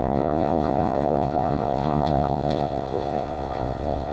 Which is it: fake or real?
fake